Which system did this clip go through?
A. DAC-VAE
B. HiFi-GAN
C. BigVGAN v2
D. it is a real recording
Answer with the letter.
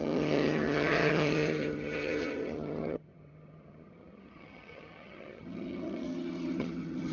B